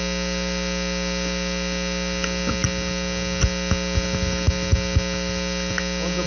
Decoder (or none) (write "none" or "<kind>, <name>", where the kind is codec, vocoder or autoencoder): none